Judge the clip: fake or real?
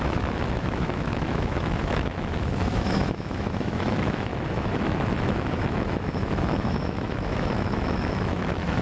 fake